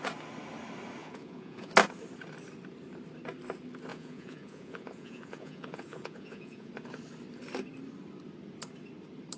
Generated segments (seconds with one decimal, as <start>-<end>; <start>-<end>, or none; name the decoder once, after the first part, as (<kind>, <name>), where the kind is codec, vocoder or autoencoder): 1.0-1.7 (vocoder, Vocos); 3.9-6.7